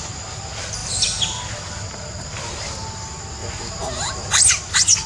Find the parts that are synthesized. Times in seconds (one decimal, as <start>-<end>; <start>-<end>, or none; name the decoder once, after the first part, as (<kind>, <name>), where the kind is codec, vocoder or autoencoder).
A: none